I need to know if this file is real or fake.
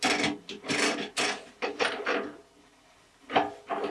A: real